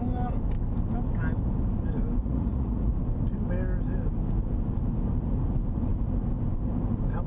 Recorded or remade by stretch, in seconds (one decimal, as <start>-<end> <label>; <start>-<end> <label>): 0.0-2.2 recorded; 2.2-2.9 remade; 2.9-7.3 recorded